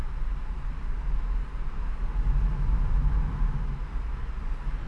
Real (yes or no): yes